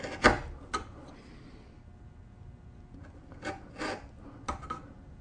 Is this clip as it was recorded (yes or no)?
yes